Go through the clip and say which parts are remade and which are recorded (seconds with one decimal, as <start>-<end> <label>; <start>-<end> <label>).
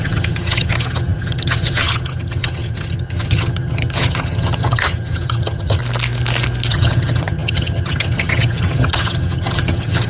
0.0-5.8 remade; 5.8-6.7 recorded; 6.7-10.1 remade